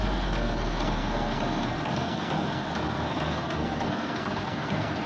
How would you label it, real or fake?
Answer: fake